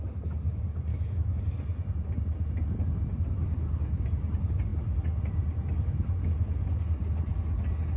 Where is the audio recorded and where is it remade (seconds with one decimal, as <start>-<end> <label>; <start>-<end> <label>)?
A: 0.0-0.9 recorded; 0.9-1.4 remade; 1.4-8.0 recorded